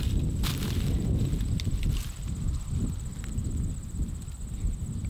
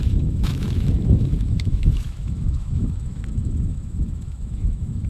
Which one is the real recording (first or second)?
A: first